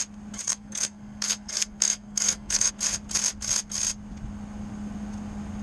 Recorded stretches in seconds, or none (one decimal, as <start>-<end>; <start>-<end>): 0.0-0.5; 2.7-5.6